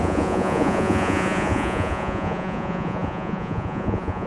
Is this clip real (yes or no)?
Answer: no